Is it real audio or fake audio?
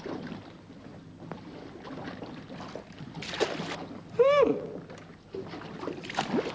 real